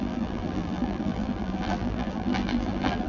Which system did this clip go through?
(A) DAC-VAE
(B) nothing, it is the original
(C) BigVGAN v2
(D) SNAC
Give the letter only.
C